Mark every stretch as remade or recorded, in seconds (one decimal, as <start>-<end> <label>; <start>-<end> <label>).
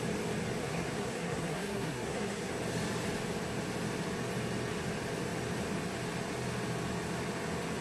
0.0-0.6 recorded; 0.6-2.5 remade; 2.5-7.8 recorded